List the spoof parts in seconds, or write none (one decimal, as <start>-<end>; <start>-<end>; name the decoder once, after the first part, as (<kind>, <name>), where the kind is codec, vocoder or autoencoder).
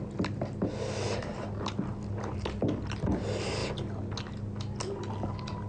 none